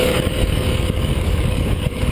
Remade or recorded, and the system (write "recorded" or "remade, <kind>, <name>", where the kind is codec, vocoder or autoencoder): remade, codec, DAC